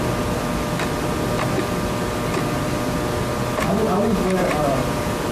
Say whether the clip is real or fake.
real